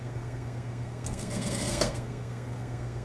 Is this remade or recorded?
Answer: remade